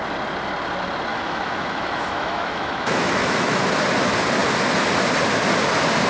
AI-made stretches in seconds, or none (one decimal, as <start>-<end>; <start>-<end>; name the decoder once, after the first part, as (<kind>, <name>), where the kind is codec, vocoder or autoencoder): 1.1-3.6 (autoencoder, DAC-VAE)